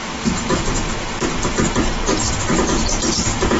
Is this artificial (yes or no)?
no